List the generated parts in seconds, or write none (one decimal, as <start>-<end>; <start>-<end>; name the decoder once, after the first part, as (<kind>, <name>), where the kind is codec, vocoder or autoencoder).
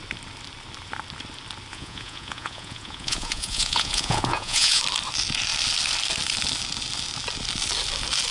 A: 1.7-4.8 (vocoder, Vocos)